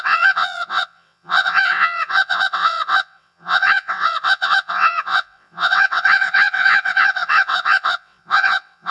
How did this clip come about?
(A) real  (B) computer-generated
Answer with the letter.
B